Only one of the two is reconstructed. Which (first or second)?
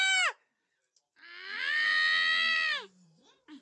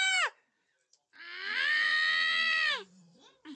second